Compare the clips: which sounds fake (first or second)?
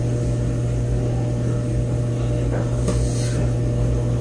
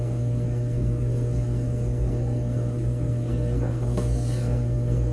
second